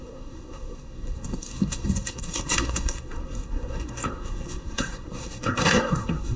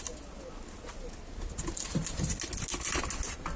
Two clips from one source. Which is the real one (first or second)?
second